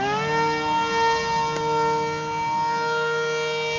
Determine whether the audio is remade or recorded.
recorded